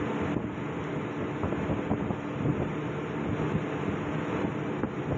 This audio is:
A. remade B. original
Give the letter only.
B